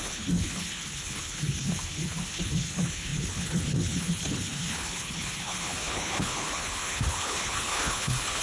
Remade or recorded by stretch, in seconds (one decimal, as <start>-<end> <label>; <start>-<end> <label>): 0.0-8.4 remade